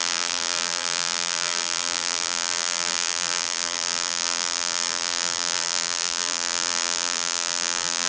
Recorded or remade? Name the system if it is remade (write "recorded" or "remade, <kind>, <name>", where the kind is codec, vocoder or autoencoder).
remade, vocoder, BigVGAN v2